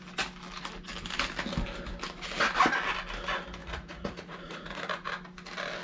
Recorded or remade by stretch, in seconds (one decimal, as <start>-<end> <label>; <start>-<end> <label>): 0.0-3.6 recorded; 3.6-5.1 remade; 5.1-5.8 recorded